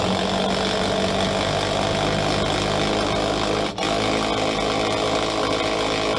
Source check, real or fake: real